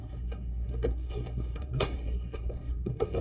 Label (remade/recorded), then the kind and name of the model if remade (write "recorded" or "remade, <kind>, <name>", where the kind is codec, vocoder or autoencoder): remade, codec, SNAC